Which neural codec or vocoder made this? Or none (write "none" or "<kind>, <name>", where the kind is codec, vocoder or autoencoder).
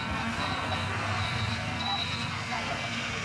codec, SNAC